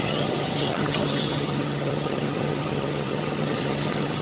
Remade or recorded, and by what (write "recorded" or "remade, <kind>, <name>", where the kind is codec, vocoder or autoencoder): remade, vocoder, HiFi-GAN